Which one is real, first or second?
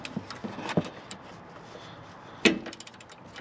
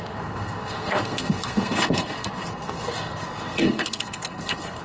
first